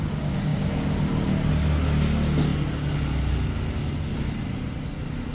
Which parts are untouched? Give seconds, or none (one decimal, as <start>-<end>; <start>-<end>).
0.0-5.3